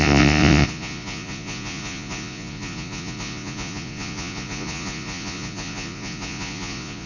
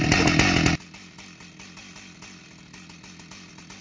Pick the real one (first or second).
second